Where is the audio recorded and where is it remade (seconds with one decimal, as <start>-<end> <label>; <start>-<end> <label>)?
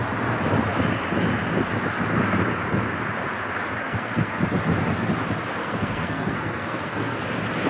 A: 0.0-3.8 recorded; 3.8-4.4 remade; 4.4-5.6 recorded; 5.6-7.2 remade; 7.2-7.7 recorded